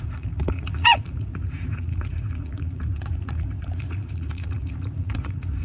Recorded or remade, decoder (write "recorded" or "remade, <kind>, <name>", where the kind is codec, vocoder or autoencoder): remade, vocoder, Vocos